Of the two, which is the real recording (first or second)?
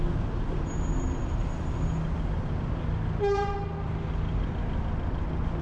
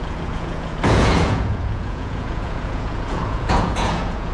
first